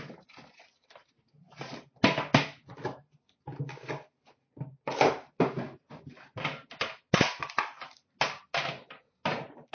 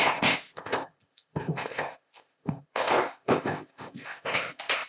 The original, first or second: first